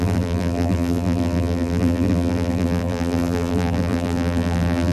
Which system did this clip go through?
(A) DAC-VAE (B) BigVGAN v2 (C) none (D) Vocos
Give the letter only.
B